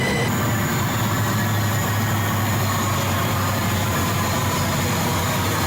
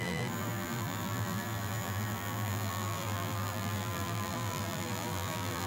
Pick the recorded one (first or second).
first